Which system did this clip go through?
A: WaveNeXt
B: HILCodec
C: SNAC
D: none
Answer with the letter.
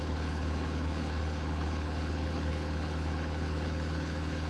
B